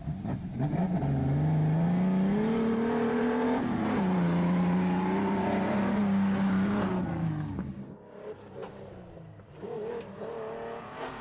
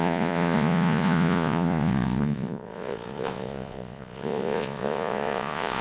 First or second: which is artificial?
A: second